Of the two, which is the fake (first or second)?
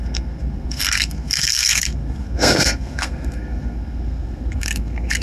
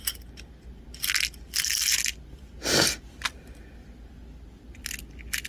first